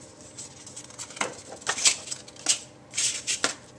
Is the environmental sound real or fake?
real